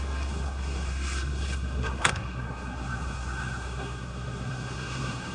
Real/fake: fake